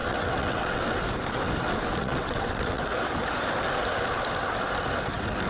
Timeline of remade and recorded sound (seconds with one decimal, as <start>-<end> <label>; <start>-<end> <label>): 0.0-0.8 remade; 0.8-2.0 recorded; 2.0-3.0 remade; 3.0-5.5 recorded